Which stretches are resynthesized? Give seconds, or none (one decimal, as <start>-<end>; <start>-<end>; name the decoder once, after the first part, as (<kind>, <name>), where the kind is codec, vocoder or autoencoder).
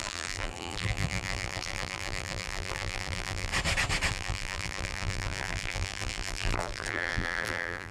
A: 0.0-3.5 (vocoder, BigVGAN v2); 4.1-7.9